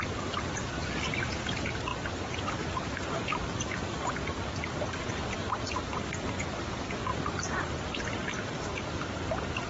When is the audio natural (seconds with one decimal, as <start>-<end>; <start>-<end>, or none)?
0.0-3.3; 6.6-7.1